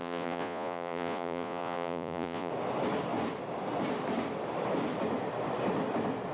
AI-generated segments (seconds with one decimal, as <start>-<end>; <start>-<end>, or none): 0.0-2.5